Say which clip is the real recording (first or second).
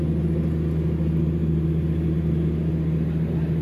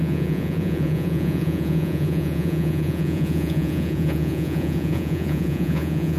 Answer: first